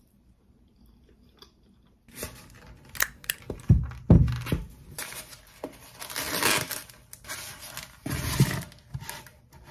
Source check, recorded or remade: recorded